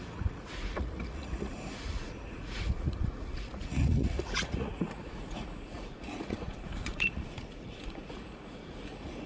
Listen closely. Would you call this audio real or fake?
fake